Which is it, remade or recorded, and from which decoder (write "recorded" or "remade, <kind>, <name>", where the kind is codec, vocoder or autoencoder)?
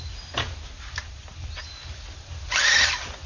recorded